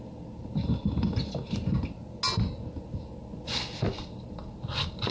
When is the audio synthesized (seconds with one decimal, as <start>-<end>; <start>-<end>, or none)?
none